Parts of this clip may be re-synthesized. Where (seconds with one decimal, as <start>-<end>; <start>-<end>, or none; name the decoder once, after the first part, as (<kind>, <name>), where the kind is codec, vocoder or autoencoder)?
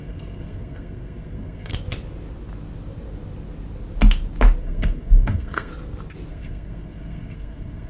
0.0-1.7 (codec, SNAC); 4.6-5.7; 6.3-7.9